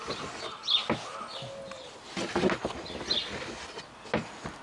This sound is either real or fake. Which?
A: real